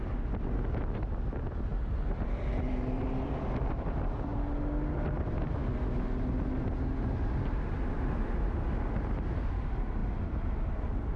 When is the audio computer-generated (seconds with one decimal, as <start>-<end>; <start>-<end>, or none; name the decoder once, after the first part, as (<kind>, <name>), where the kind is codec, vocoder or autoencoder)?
0.0-4.3 (vocoder, BigVGAN v2); 7.1-11.2